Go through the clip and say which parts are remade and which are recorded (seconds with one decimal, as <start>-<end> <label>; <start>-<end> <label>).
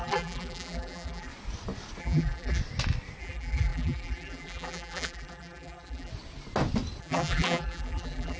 0.0-1.3 remade; 1.3-2.0 recorded; 2.0-2.6 remade; 2.6-3.2 recorded; 3.2-6.1 remade; 6.1-7.0 recorded; 7.0-8.4 remade